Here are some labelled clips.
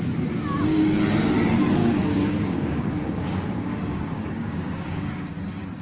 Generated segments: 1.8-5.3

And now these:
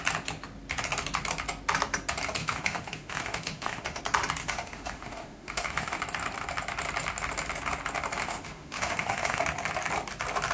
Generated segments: 2.4-4.0; 4.4-6.0; 8.2-9.4

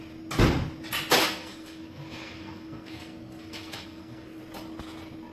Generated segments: 1.2-4.4

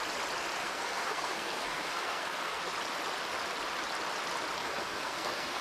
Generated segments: 0.6-2.6; 4.6-5.6